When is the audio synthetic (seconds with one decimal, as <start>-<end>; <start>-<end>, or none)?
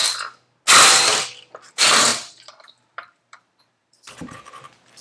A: 1.7-5.0